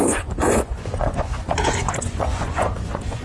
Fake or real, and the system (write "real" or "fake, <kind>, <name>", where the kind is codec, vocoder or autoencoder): fake, vocoder, Vocos